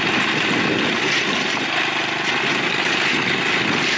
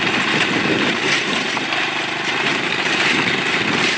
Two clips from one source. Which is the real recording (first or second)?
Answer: first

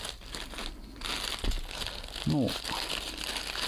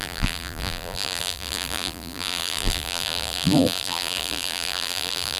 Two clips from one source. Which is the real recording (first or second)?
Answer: first